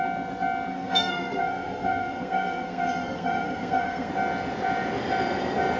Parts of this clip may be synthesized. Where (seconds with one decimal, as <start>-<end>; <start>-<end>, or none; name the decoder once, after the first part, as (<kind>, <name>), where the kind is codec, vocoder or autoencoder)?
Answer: 0.7-4.1 (codec, SNAC)